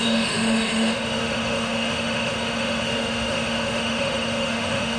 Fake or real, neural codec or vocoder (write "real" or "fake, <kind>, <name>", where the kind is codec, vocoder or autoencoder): fake, autoencoder, DAC-VAE